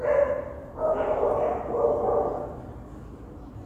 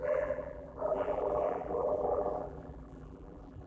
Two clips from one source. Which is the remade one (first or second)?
second